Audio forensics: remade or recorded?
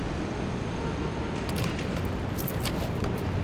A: recorded